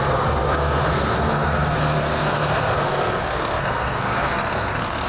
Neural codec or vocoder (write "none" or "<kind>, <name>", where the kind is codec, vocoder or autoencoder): codec, SNAC